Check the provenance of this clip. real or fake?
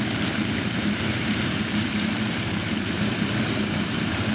fake